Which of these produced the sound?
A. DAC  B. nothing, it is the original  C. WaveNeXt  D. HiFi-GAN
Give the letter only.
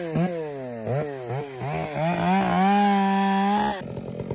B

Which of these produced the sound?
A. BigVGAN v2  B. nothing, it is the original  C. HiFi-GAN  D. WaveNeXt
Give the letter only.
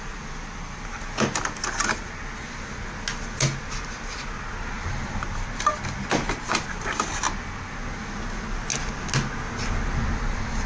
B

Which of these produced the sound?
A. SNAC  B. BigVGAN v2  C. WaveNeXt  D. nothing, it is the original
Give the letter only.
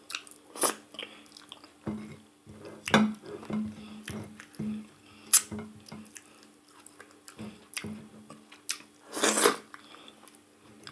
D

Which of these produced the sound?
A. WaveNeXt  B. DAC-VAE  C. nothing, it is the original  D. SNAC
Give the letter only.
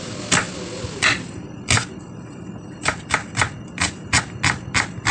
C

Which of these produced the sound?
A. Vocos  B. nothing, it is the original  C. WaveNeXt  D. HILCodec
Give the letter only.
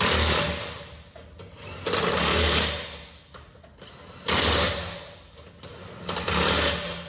B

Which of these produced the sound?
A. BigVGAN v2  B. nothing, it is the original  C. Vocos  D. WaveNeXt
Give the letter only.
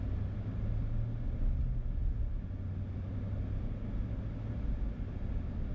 B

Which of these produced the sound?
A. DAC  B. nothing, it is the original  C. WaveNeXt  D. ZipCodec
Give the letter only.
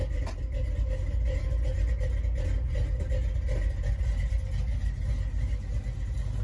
B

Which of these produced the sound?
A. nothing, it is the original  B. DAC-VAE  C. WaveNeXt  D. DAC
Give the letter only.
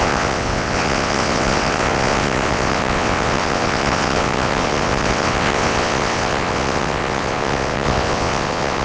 C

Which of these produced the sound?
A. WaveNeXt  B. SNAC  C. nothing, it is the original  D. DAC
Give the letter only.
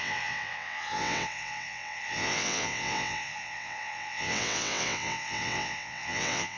A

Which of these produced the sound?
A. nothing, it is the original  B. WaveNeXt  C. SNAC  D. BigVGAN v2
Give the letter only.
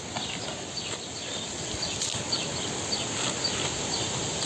A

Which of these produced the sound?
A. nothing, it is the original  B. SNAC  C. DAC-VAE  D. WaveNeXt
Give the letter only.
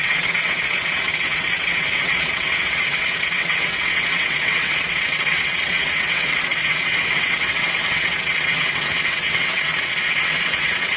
D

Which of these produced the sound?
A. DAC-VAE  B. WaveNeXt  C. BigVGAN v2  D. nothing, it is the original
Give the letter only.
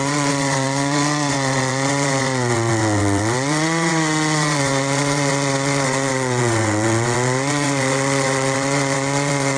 B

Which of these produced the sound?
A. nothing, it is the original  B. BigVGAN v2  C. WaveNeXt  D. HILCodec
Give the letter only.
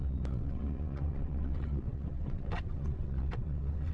C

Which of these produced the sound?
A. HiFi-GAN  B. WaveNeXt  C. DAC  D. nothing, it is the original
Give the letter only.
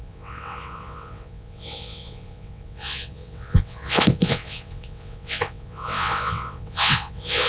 B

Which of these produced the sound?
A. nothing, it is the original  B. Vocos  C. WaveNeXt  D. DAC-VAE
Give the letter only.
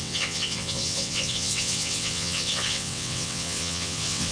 C